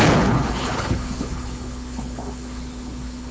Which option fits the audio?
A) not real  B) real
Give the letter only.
A